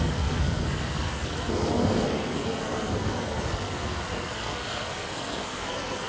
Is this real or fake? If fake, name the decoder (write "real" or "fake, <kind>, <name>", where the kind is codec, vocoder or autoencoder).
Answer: fake, codec, SNAC